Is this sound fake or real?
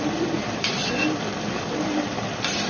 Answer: fake